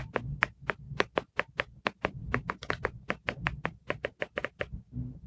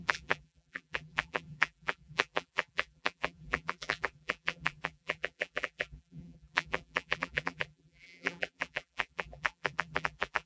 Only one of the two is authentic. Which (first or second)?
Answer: first